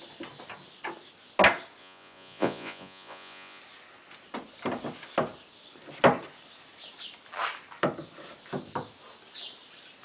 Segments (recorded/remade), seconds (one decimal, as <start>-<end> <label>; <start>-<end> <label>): 0.0-1.8 recorded; 1.8-3.6 remade; 3.6-10.0 recorded

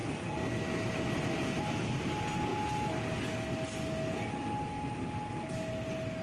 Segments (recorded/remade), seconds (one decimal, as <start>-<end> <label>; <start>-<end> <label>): 0.0-6.2 recorded

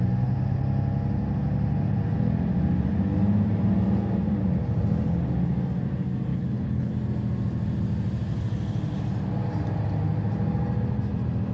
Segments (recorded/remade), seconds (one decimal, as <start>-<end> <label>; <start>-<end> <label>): 0.0-6.3 recorded; 6.3-6.9 remade; 6.9-11.5 recorded

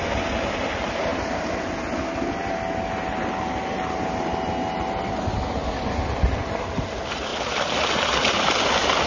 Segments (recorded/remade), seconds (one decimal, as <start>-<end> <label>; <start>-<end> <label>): 0.0-9.1 recorded

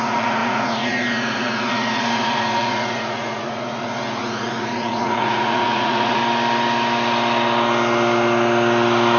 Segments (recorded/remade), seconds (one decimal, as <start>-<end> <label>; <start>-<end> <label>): 0.0-6.2 remade; 6.2-9.2 recorded

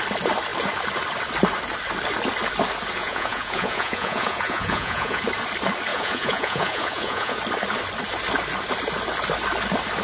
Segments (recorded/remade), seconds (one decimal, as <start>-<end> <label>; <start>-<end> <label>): 0.0-3.0 recorded; 3.0-5.2 remade; 5.2-5.9 recorded; 5.9-7.4 remade; 7.4-10.0 recorded